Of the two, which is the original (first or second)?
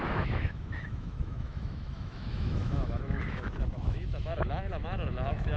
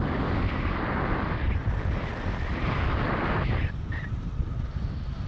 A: second